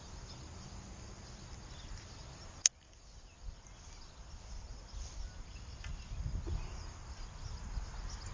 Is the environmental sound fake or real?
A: real